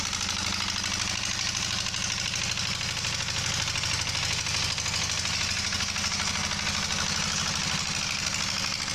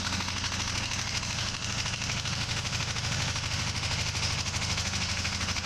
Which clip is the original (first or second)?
first